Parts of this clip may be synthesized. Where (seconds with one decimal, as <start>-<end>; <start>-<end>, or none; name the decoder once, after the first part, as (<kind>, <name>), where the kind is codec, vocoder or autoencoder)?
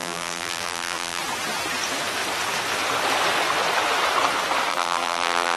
0.0-1.2 (vocoder, BigVGAN v2); 4.7-5.6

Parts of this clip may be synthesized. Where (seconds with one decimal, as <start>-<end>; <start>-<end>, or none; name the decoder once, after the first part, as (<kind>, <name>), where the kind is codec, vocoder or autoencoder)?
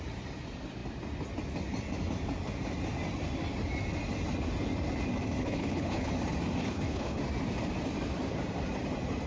5.4-6.1 (codec, HILCodec); 6.6-7.2